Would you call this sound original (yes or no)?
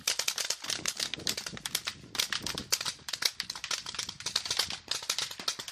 yes